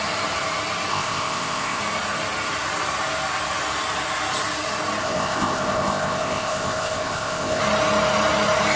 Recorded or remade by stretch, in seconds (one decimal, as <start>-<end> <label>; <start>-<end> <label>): 0.0-0.9 recorded; 0.9-1.8 remade; 1.8-5.0 recorded; 5.0-7.6 remade; 7.6-8.8 recorded